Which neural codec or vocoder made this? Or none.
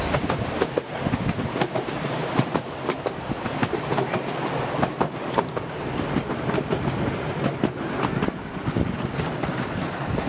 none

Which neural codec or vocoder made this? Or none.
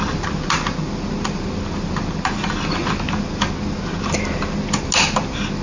none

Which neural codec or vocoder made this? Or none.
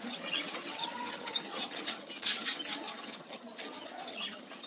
vocoder, HiFi-GAN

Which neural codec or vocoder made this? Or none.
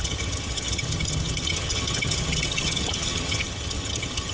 vocoder, HiFi-GAN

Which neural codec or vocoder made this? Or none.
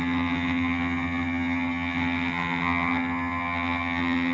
vocoder, HiFi-GAN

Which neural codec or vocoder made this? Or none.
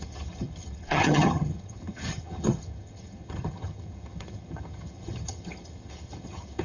vocoder, HiFi-GAN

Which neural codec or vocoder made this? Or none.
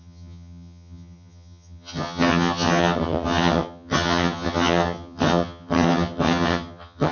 vocoder, HiFi-GAN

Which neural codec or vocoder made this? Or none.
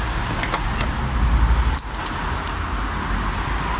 none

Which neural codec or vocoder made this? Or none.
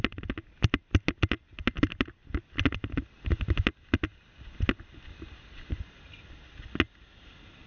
none